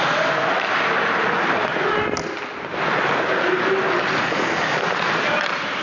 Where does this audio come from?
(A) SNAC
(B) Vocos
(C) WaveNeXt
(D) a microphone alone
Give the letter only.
D